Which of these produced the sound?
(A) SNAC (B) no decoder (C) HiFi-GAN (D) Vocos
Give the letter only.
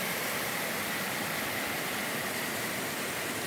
B